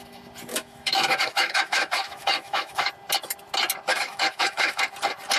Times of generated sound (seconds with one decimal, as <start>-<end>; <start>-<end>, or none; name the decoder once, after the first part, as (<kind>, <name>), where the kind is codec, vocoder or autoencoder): 0.5-2.9 (autoencoder, DAC-VAE); 3.9-4.8